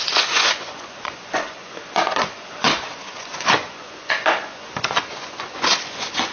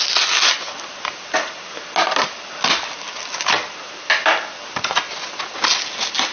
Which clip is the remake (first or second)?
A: first